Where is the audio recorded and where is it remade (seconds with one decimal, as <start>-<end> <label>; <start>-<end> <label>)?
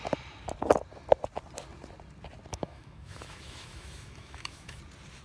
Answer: 0.0-2.5 recorded; 2.5-4.8 remade; 4.8-5.2 recorded